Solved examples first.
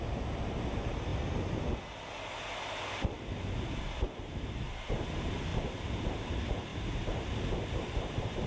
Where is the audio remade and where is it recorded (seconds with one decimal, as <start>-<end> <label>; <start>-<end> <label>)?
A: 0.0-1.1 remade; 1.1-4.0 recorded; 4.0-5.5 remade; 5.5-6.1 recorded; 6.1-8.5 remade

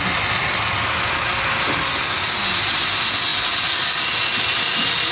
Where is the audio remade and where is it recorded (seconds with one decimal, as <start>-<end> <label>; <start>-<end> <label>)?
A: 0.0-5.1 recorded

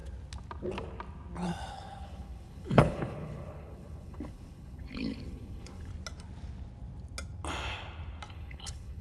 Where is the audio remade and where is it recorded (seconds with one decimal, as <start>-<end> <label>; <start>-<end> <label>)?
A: 0.0-1.7 recorded; 1.7-5.9 remade; 5.9-8.3 recorded; 8.3-9.0 remade

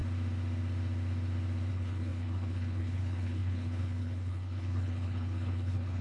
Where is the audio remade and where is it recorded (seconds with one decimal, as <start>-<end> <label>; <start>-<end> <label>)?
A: 0.0-1.7 recorded; 1.7-6.0 remade